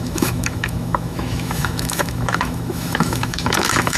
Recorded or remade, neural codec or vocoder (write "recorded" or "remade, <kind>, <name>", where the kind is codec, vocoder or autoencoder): remade, autoencoder, DAC-VAE